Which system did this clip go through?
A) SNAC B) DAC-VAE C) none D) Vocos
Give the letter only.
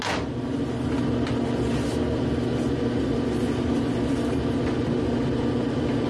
C